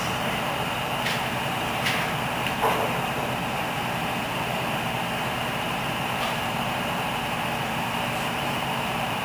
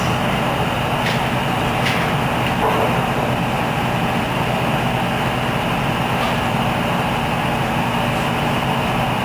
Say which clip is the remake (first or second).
first